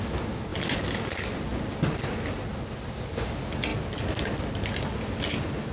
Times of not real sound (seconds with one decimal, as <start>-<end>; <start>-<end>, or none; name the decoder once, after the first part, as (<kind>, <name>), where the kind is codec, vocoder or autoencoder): none